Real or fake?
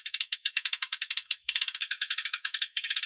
fake